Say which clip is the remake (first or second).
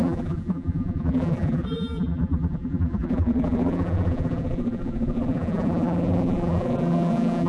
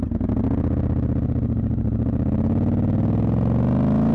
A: first